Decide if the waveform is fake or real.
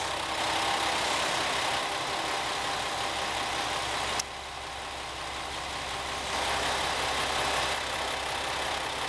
real